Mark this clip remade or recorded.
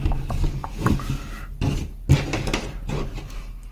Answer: recorded